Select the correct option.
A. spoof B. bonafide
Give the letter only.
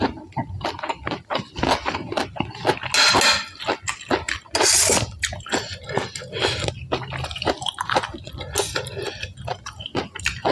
B